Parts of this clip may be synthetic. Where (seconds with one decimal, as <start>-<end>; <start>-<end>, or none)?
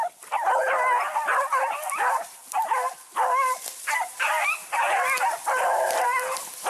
none